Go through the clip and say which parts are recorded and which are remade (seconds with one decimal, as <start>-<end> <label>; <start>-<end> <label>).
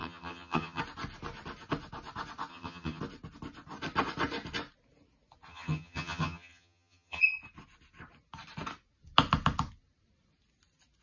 0.0-0.8 remade; 0.8-2.5 recorded; 2.5-3.0 remade; 3.0-5.5 recorded; 5.5-7.2 remade; 7.2-11.0 recorded